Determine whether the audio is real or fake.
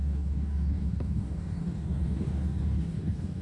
fake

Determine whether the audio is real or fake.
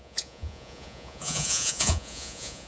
fake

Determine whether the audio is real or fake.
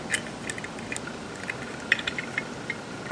real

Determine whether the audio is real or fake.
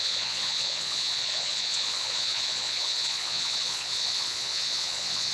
fake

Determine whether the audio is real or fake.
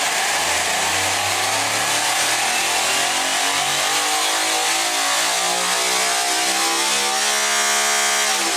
real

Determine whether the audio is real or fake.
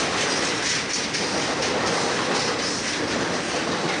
real